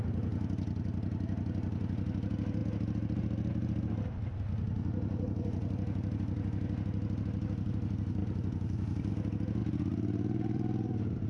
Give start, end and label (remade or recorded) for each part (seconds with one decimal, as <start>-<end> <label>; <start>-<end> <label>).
0.0-8.2 recorded; 8.2-9.1 remade; 9.1-9.6 recorded; 9.6-11.3 remade